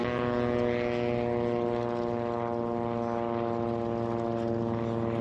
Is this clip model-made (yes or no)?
no